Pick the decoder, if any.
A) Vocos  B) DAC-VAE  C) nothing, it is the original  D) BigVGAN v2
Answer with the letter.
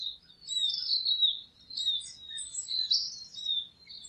C